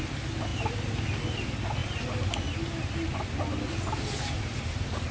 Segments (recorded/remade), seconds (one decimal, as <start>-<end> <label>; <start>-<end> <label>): 0.0-5.1 recorded